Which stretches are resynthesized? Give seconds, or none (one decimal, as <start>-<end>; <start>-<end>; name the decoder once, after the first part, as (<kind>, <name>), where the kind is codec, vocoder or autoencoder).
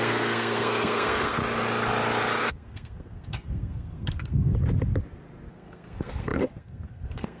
0.0-1.4 (codec, SNAC); 2.4-4.5; 5.5-7.4